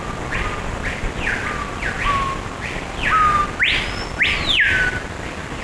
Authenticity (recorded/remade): recorded